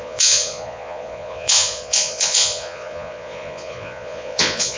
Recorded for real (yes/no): no